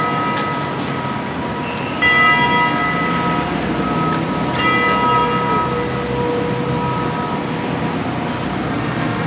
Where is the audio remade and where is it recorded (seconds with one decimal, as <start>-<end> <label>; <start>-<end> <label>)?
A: 0.0-9.3 recorded